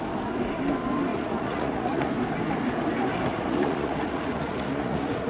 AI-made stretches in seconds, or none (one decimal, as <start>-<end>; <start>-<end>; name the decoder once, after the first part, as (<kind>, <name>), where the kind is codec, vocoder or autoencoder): 1.1-2.1 (vocoder, Vocos); 3.3-5.3